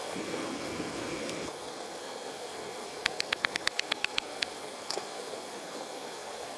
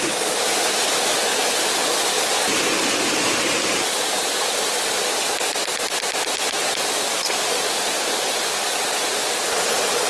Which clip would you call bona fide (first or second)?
second